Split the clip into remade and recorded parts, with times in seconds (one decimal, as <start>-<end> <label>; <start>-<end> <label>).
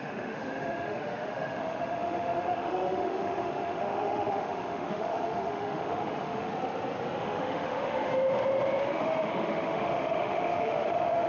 0.0-6.5 remade; 6.5-7.2 recorded; 7.2-8.1 remade; 8.1-8.8 recorded; 8.8-11.3 remade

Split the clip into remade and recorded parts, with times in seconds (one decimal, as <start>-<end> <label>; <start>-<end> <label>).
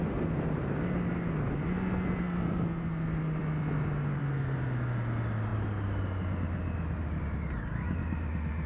0.0-8.7 recorded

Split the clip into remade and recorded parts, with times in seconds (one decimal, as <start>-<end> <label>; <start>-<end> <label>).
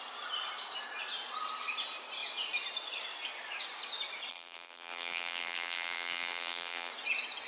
0.0-4.3 recorded; 4.3-6.9 remade; 6.9-7.5 recorded